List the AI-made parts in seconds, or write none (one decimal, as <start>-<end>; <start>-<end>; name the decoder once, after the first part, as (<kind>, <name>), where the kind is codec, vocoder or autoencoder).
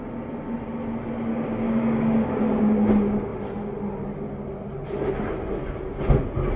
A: 1.3-2.4 (codec, DAC)